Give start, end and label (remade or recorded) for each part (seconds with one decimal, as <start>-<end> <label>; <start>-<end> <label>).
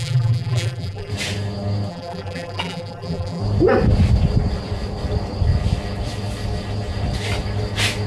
0.0-1.1 remade; 1.1-1.9 recorded; 1.9-3.4 remade; 3.4-8.1 recorded